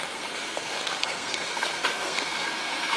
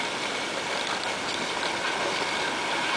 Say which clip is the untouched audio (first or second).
second